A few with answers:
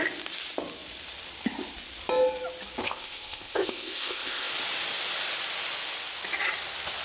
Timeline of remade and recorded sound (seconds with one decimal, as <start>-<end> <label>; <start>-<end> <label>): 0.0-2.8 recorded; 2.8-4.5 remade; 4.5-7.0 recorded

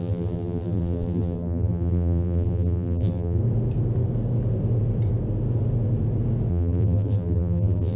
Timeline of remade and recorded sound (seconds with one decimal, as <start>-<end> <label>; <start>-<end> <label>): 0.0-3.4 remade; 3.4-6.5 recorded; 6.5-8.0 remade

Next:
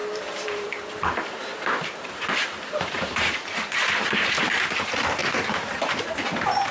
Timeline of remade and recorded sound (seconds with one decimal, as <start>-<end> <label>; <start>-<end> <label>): 0.0-6.7 remade